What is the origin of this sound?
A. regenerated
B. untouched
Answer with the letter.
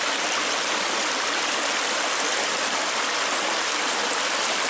B